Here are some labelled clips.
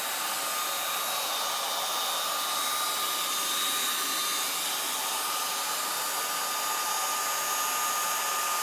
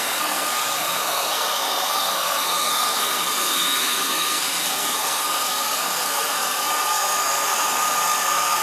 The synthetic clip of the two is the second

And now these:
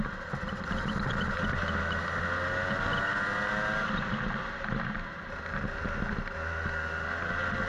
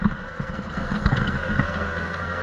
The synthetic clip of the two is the second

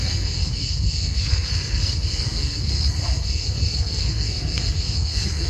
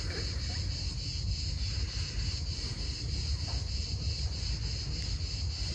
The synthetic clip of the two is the first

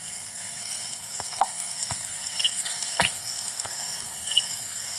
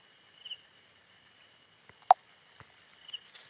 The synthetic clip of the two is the first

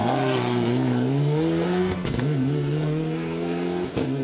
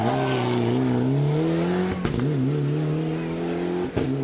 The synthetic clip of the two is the first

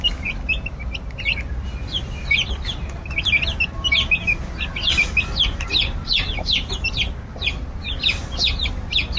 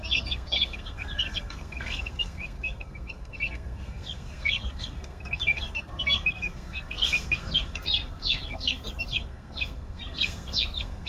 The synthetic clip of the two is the second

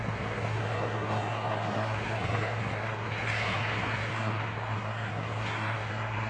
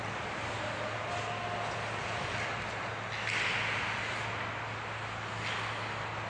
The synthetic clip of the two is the first